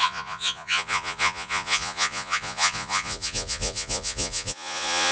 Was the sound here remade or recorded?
remade